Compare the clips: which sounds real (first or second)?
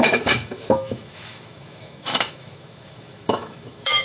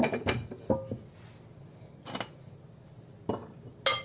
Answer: second